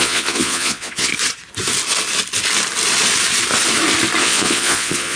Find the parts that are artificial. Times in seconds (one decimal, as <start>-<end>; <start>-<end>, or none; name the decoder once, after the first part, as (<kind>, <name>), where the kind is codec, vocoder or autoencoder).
0.0-1.1 (vocoder, Vocos); 4.2-5.2